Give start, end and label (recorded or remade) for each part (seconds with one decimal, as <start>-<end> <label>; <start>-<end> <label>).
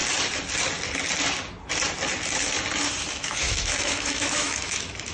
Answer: 0.0-3.1 recorded; 3.1-5.1 remade